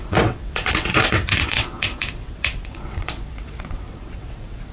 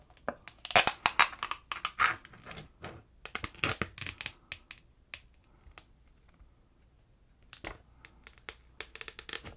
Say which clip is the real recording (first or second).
second